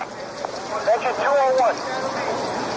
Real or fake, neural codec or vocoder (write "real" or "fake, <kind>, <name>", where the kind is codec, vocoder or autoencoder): real